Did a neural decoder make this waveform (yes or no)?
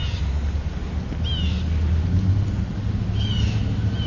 no